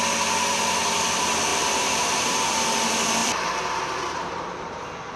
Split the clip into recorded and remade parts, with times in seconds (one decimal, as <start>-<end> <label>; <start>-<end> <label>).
0.0-1.5 recorded; 1.5-2.6 remade; 2.6-3.2 recorded; 3.2-4.8 remade; 4.8-5.2 recorded